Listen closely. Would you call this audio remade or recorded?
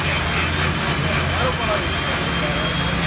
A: recorded